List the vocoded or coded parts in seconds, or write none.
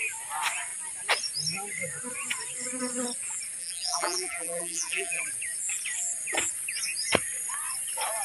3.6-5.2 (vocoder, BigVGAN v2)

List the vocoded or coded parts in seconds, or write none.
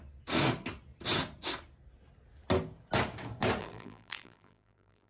3.6-5.1 (vocoder, BigVGAN v2)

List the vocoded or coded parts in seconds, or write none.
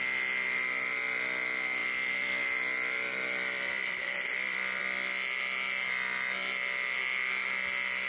1.8-4.8 (vocoder, BigVGAN v2)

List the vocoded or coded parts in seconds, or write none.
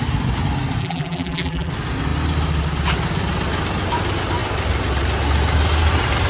0.8-1.7 (vocoder, BigVGAN v2)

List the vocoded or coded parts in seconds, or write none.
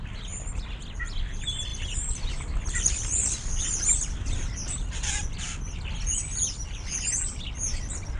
none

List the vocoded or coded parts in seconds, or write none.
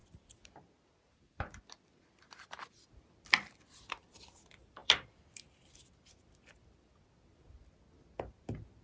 0.0-4.2 (vocoder, BigVGAN v2); 4.8-5.9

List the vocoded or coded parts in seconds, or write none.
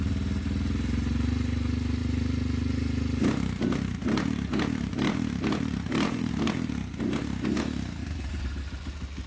2.0-6.3 (vocoder, BigVGAN v2); 8.0-8.6